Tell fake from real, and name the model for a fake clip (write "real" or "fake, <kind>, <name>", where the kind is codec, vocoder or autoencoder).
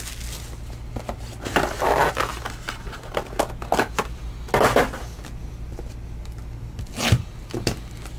real